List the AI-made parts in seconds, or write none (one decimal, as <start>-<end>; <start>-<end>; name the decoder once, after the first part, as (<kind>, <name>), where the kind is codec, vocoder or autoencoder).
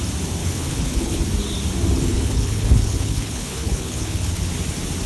0.4-1.2 (codec, HILCodec); 2.1-4.5